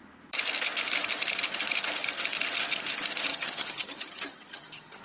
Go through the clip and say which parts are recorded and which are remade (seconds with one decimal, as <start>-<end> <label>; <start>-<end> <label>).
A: 0.0-3.3 recorded; 3.3-5.0 remade